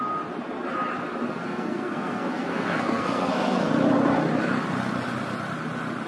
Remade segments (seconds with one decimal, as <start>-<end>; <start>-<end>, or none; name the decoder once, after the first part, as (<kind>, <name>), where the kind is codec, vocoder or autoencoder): 1.4-3.7 (codec, SNAC)